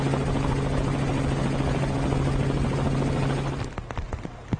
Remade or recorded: recorded